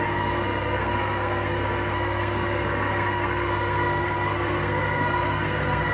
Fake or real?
fake